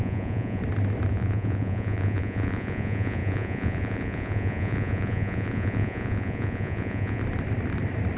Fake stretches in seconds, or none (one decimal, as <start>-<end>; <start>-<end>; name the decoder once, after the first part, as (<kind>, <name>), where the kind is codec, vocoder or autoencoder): 0.0-0.6 (vocoder, Vocos); 1.1-7.2